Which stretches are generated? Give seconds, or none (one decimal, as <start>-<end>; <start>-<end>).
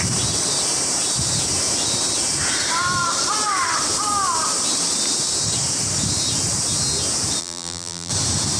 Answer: 7.4-8.1